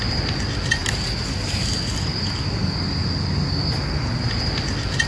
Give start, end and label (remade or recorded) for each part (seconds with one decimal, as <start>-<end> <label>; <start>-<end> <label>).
0.0-5.1 recorded